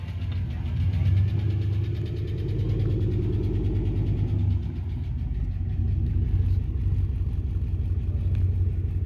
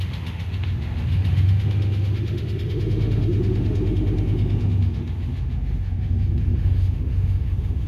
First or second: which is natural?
first